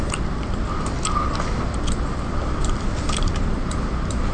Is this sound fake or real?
real